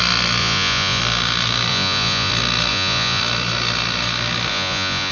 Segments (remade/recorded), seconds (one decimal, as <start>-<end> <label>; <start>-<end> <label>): 0.0-0.4 recorded; 0.4-1.0 remade; 1.0-1.7 recorded; 1.7-2.3 remade; 2.3-2.7 recorded; 2.7-3.2 remade; 3.2-4.5 recorded; 4.5-5.1 remade